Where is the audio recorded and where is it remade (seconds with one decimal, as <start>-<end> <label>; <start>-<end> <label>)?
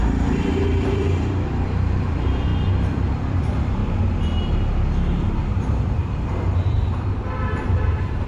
0.0-2.5 remade; 2.5-3.4 recorded; 3.4-3.8 remade; 3.8-5.1 recorded; 5.1-8.3 remade